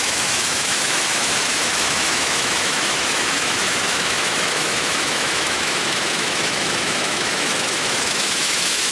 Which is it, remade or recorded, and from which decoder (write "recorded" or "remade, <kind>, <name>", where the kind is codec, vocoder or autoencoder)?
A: remade, autoencoder, DAC-VAE